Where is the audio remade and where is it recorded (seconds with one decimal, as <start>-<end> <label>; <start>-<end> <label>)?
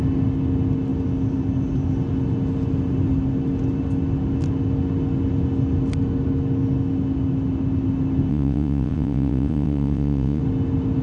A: 0.0-8.3 recorded; 8.3-10.4 remade; 10.4-11.0 recorded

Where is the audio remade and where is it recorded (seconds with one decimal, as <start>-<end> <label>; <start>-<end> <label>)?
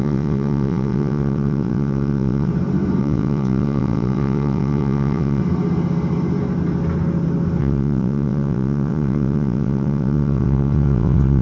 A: 0.0-2.5 remade; 2.5-3.0 recorded; 3.0-5.4 remade; 5.4-7.6 recorded; 7.6-11.4 remade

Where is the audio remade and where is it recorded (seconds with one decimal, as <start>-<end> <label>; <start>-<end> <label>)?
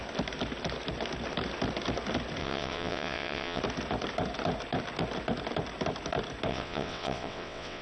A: 0.0-2.4 recorded; 2.4-3.6 remade; 3.6-6.5 recorded; 6.5-7.8 remade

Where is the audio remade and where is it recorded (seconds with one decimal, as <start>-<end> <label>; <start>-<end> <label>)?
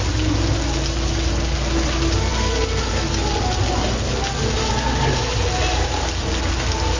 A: 0.0-7.0 recorded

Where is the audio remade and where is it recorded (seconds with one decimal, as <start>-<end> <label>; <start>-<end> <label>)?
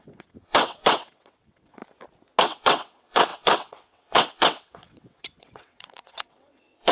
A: 0.0-1.8 remade; 1.8-2.4 recorded; 2.4-6.9 remade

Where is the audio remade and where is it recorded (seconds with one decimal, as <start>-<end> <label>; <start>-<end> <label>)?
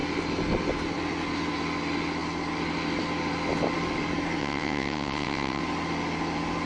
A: 0.0-4.4 recorded; 4.4-5.6 remade; 5.6-6.7 recorded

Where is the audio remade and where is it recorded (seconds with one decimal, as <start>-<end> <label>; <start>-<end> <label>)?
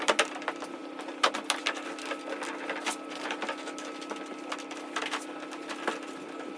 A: 0.0-6.6 recorded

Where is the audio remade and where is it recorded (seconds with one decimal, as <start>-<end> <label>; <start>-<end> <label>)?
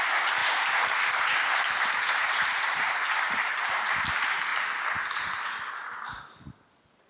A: 0.0-7.1 recorded